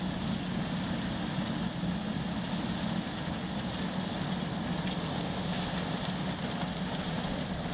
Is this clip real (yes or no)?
yes